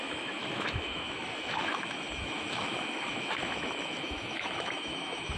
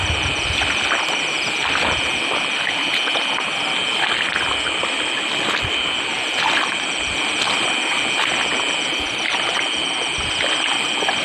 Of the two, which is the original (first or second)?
second